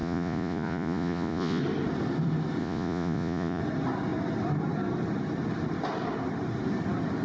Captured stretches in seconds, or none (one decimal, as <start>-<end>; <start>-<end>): 1.6-2.6; 3.6-7.2